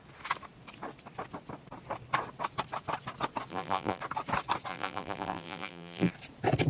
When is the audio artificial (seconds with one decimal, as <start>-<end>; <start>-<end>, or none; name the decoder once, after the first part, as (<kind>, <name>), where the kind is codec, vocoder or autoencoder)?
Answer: 3.5-4.0 (vocoder, BigVGAN v2); 4.7-6.1